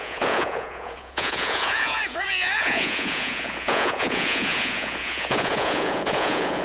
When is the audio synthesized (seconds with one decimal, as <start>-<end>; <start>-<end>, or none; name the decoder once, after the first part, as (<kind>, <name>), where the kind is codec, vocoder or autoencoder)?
0.0-6.6 (vocoder, Vocos)